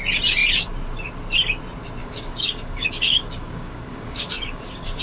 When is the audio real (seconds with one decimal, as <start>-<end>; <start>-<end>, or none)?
0.0-2.0